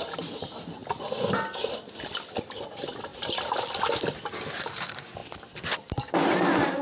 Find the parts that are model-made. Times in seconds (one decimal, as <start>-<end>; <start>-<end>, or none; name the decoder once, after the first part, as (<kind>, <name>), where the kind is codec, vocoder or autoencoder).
none